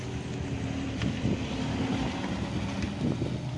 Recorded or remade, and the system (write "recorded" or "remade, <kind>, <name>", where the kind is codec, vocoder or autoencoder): recorded